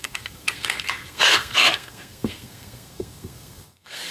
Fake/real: fake